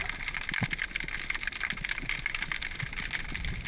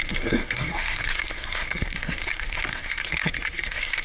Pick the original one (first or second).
first